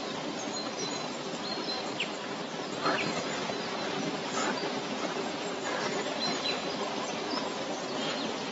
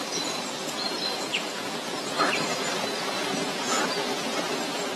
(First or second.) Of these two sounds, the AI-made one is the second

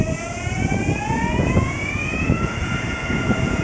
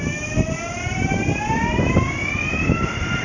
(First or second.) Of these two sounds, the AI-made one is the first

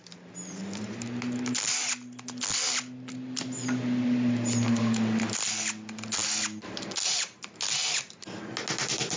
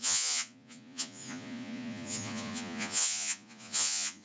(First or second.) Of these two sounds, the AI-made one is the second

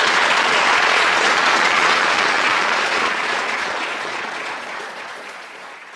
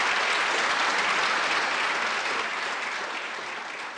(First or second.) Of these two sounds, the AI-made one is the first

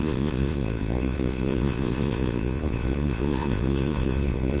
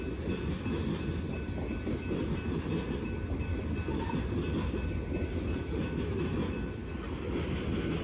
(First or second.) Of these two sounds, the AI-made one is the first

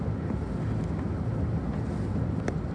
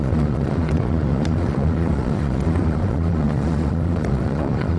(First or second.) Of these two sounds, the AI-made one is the second